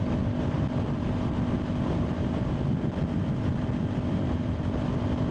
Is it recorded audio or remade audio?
recorded